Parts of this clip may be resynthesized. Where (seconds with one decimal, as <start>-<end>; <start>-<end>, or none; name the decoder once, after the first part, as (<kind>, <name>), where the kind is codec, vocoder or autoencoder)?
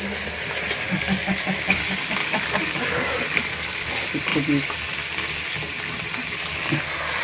2.2-3.9 (codec, DAC)